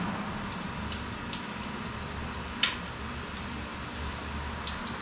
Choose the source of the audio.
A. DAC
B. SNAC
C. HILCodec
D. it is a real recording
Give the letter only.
D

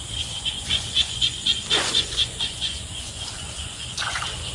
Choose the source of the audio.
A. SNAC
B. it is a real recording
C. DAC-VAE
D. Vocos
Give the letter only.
D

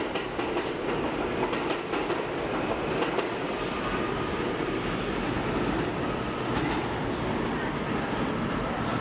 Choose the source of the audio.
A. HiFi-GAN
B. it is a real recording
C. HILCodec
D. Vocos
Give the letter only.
B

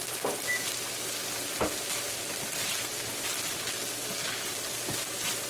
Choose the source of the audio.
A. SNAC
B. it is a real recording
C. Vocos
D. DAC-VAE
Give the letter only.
B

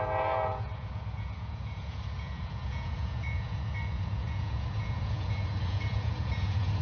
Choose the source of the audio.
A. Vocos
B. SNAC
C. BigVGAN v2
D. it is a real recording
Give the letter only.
A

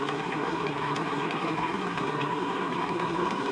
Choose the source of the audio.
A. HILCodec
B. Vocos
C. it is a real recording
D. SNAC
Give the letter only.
D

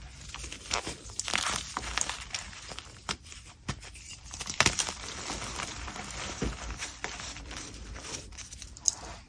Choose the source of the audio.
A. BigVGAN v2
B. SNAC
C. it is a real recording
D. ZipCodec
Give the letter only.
A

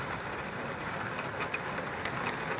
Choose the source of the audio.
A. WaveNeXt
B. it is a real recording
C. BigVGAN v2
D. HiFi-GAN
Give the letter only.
B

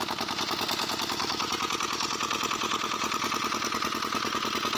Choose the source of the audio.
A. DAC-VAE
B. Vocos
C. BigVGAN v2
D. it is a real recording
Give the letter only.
D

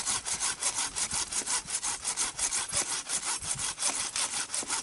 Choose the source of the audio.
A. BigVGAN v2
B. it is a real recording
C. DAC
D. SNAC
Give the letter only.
B